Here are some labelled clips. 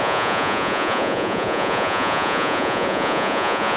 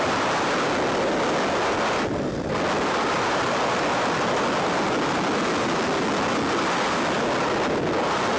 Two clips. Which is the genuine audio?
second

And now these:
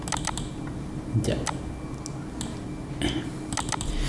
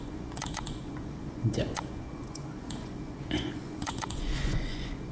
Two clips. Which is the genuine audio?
first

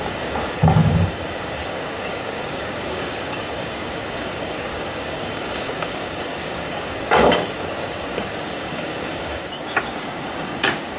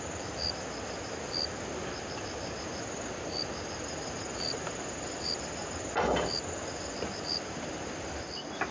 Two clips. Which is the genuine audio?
second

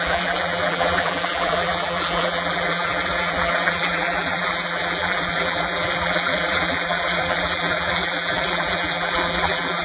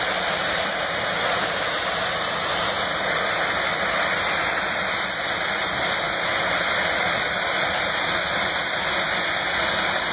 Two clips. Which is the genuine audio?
second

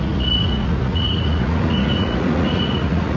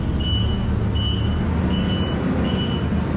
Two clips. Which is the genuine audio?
second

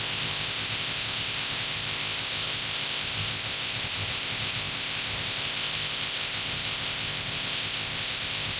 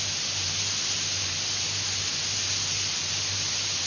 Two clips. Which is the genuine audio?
second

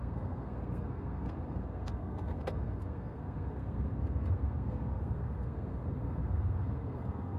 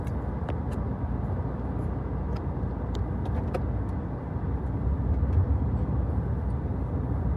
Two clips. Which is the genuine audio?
second